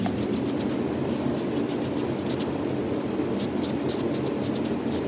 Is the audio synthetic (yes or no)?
no